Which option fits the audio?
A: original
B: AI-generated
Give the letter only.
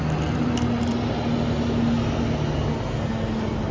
A